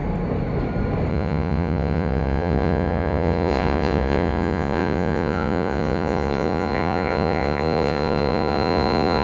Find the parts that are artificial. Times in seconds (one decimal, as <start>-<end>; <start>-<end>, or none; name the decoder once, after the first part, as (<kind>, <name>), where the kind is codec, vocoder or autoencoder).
1.1-9.2 (vocoder, Vocos)